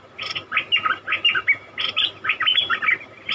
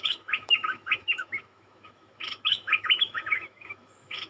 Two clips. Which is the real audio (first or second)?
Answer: first